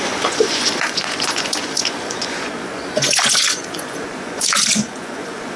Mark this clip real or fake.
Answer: fake